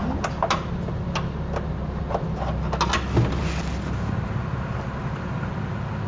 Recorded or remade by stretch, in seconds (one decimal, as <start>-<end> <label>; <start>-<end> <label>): 0.0-6.1 recorded